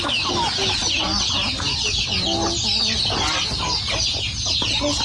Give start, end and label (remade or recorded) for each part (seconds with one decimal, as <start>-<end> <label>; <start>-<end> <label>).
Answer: 0.0-5.0 recorded